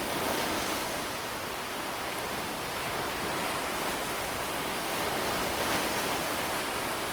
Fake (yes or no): no